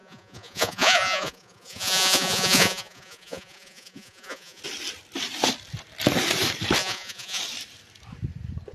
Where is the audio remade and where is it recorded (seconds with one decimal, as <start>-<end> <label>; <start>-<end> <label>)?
0.0-4.6 remade; 4.6-6.8 recorded; 6.8-7.4 remade; 7.4-8.7 recorded